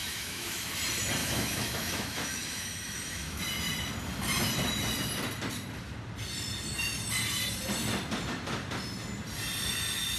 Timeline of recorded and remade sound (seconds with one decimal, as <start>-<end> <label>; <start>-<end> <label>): 0.0-0.7 remade; 0.7-1.2 recorded; 1.2-3.4 remade; 3.4-10.2 recorded